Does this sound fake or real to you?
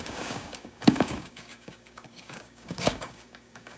fake